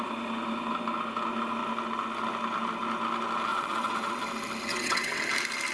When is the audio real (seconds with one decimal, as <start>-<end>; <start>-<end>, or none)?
0.0-3.5; 4.2-4.7; 5.2-5.7